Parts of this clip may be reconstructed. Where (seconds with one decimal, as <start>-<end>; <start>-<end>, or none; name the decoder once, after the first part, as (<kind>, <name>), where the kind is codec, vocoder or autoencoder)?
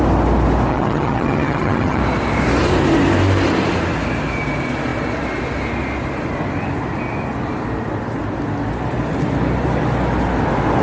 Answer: 0.7-2.0 (vocoder, HiFi-GAN)